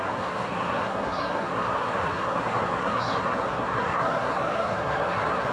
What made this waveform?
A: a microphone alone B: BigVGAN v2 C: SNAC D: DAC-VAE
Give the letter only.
C